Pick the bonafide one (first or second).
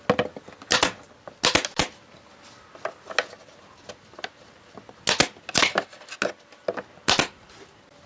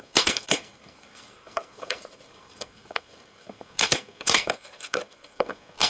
first